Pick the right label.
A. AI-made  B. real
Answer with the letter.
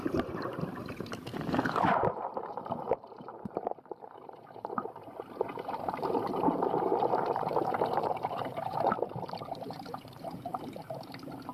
A